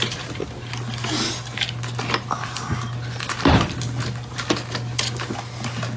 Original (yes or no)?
yes